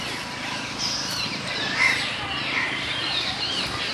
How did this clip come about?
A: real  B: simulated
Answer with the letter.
B